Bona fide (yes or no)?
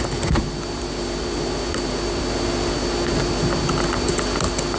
yes